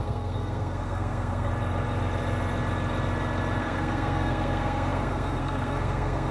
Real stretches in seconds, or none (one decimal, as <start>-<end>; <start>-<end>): 1.5-3.6